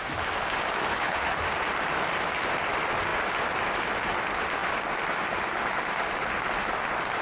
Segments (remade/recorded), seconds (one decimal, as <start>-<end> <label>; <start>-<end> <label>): 0.0-0.9 recorded; 0.9-1.4 remade; 1.4-7.2 recorded